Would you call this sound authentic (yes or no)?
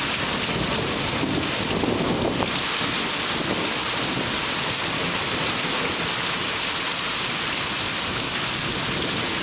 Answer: yes